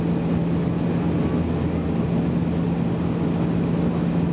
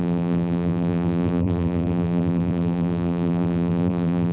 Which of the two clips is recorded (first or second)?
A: first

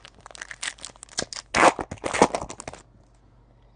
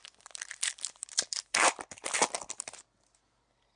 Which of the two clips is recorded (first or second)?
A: first